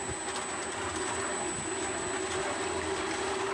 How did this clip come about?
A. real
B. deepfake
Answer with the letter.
A